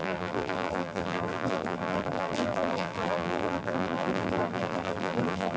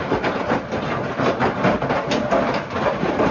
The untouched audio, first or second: second